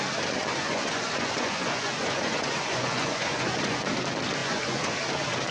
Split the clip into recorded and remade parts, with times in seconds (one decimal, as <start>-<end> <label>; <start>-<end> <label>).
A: 0.0-0.6 recorded; 0.6-3.8 remade; 3.8-4.4 recorded; 4.4-4.9 remade; 4.9-5.5 recorded